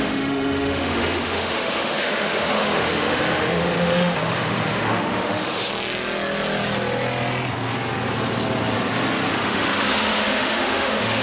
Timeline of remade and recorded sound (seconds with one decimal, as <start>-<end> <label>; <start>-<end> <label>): 0.0-5.7 remade; 5.7-9.3 recorded; 9.3-11.2 remade